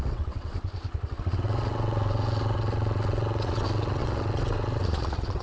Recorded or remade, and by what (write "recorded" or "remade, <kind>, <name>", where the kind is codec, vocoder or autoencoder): remade, vocoder, WaveNeXt